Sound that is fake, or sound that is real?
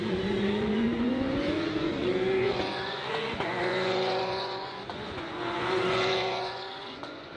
fake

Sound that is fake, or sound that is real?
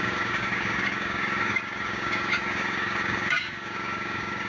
fake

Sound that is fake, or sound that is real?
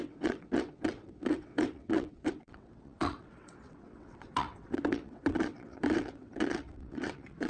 fake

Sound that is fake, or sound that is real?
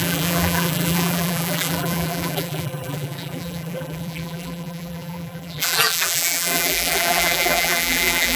fake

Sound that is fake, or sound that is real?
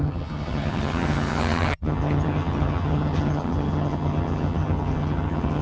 fake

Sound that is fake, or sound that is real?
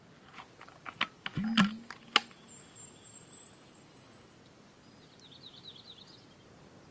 real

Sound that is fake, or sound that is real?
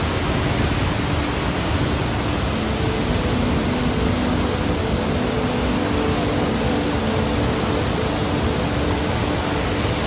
real